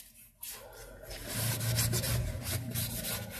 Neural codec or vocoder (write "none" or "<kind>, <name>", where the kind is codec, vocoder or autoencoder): none